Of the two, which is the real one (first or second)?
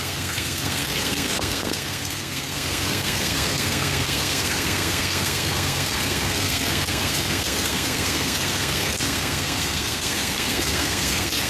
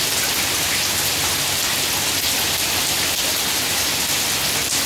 second